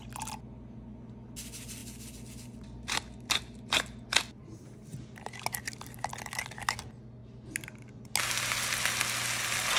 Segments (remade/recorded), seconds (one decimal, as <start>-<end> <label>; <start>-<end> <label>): 0.0-9.8 recorded